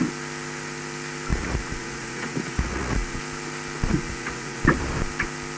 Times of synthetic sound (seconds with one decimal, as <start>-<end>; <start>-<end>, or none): 1.3-3.2; 3.9-4.6